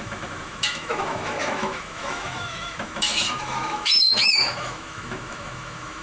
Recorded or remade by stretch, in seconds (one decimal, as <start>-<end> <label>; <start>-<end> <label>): 0.0-6.0 remade